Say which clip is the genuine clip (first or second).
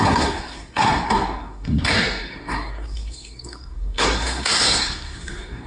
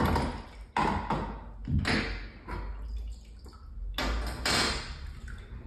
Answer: second